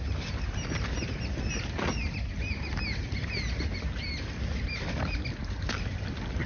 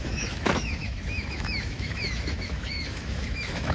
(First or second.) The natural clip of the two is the first